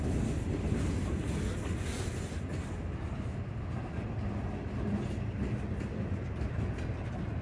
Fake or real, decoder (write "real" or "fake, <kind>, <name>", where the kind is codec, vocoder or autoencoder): real